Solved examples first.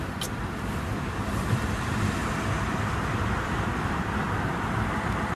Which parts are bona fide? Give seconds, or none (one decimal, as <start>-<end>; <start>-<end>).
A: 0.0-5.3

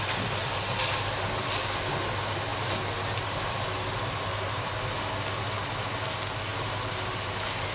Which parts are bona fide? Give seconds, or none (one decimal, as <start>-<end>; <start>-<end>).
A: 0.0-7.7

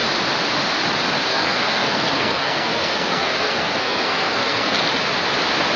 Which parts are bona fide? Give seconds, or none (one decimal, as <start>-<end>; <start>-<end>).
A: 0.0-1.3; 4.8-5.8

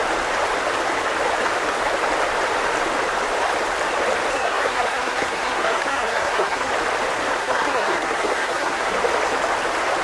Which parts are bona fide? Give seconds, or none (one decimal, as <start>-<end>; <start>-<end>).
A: 0.0-4.3; 6.7-7.4; 8.9-10.0

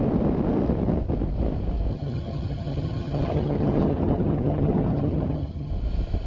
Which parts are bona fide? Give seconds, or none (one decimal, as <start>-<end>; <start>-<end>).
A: 0.0-1.9; 5.7-6.3